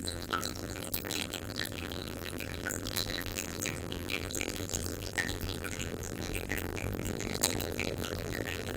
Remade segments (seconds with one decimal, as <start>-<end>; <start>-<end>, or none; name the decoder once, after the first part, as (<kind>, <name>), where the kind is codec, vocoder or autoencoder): 0.0-8.8 (vocoder, BigVGAN v2)